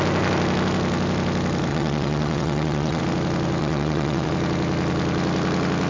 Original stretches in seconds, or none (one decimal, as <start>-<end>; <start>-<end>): 0.0-1.7; 3.0-3.6; 4.3-5.9